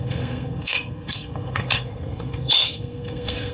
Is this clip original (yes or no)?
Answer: no